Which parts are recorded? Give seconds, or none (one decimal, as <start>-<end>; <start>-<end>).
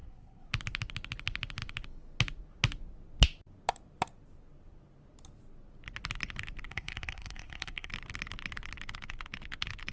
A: 0.5-6.7; 7.9-9.9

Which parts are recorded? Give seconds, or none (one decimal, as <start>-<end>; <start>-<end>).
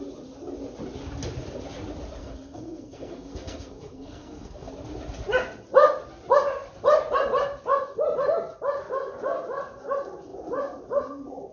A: 0.0-2.2; 4.7-11.5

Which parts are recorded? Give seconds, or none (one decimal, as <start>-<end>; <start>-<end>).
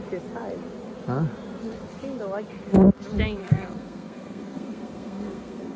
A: 0.0-3.4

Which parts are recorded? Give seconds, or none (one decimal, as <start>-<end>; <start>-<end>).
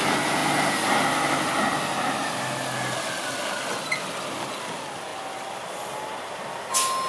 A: 0.0-7.1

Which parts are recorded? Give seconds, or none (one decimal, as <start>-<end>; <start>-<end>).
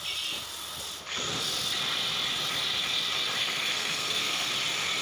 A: 0.0-3.4; 4.5-5.0